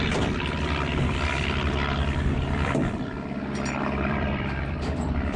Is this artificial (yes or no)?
yes